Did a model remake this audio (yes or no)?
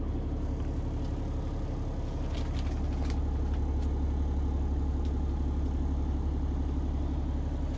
no